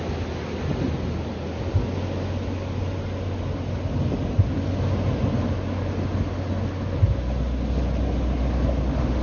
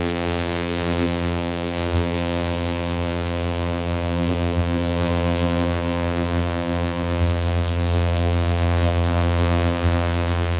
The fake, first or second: second